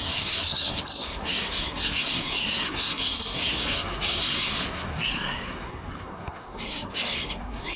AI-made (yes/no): yes